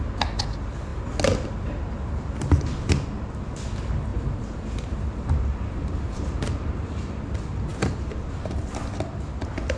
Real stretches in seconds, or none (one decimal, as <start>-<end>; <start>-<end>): 0.0-4.1; 7.2-9.8